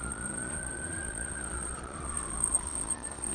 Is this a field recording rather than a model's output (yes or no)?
no